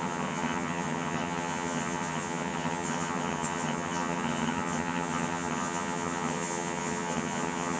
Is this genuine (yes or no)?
no